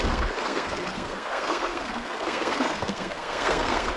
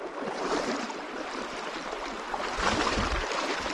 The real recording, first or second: second